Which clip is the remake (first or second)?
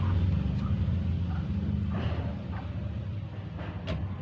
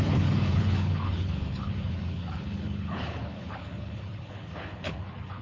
second